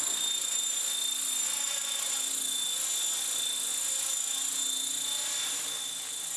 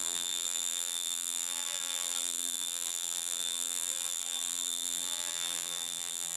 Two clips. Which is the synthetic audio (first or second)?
second